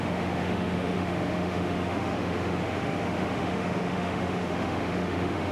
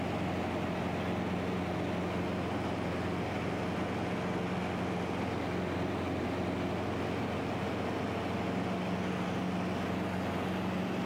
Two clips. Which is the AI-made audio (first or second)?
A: first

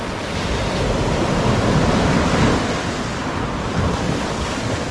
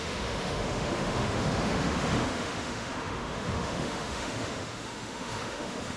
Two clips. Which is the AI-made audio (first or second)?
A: second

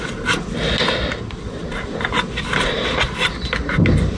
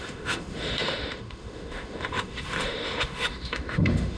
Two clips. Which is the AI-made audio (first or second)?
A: second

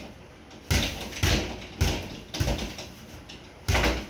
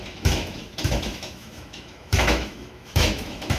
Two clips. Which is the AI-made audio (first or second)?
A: second